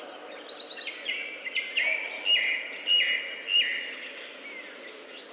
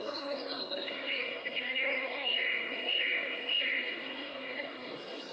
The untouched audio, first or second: first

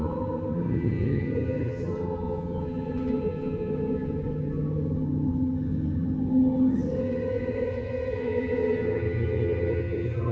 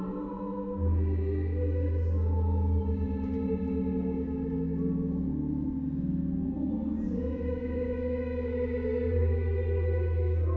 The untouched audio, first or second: second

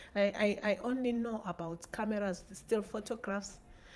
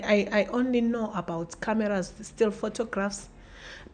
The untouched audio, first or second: second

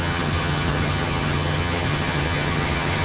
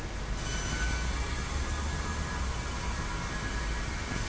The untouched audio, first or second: second